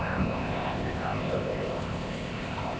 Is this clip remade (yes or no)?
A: yes